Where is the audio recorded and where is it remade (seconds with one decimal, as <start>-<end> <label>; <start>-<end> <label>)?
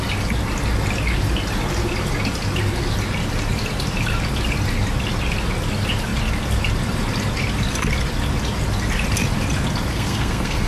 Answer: 0.0-9.9 recorded; 9.9-10.7 remade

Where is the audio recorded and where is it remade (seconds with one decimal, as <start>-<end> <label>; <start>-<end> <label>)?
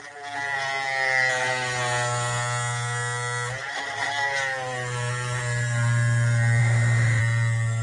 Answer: 0.0-6.6 recorded; 6.6-7.2 remade; 7.2-7.8 recorded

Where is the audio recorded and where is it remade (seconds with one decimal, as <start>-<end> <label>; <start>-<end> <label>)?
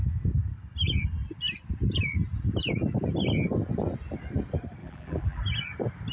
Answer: 0.0-4.8 recorded; 4.8-5.4 remade; 5.4-6.1 recorded